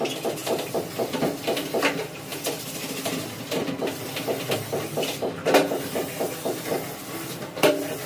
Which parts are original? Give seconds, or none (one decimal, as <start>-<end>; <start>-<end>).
0.0-8.1